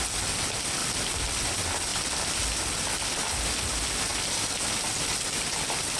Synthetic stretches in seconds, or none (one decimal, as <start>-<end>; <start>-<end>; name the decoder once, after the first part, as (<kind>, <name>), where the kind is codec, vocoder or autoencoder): 0.8-1.4 (vocoder, BigVGAN v2); 1.9-2.4; 4.1-4.6